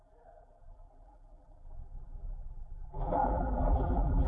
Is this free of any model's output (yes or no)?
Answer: no